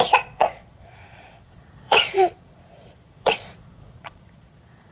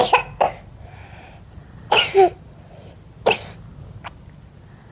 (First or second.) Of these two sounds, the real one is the second